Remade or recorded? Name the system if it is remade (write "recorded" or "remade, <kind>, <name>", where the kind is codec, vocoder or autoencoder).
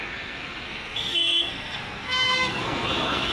remade, codec, SNAC